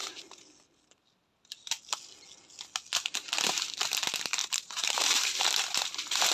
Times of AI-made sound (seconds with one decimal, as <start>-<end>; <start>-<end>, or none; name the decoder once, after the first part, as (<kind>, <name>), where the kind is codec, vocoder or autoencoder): 4.4-5.4 (vocoder, BigVGAN v2)